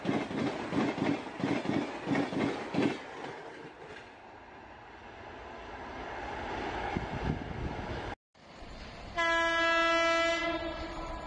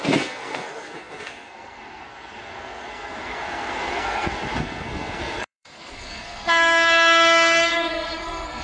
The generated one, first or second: second